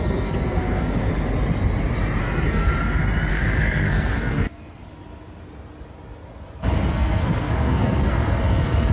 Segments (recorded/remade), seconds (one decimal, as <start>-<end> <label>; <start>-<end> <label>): 0.0-1.1 remade; 1.1-2.2 recorded; 2.2-2.7 remade; 2.7-3.3 recorded; 3.3-4.8 remade; 4.8-6.9 recorded; 6.9-8.9 remade